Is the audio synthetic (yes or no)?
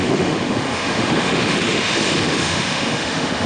yes